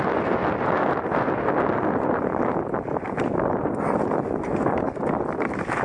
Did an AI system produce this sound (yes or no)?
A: no